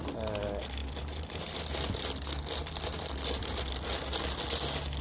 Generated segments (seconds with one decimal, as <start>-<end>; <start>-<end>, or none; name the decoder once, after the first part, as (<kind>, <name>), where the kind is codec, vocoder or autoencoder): none